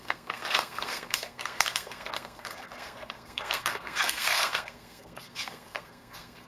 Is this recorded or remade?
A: remade